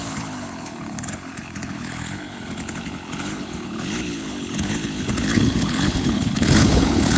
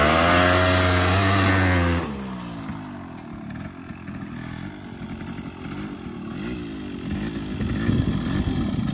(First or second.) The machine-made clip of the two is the first